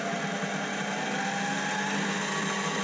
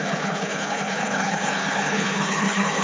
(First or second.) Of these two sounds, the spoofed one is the second